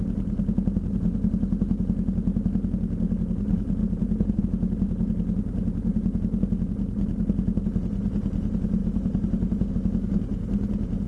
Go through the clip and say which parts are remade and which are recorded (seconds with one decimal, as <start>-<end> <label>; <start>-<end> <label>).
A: 0.0-3.8 recorded; 3.8-4.4 remade; 4.4-8.8 recorded; 8.8-9.7 remade; 9.7-11.1 recorded